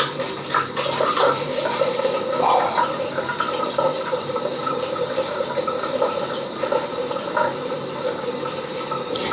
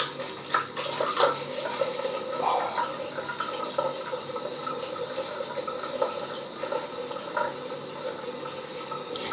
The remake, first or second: first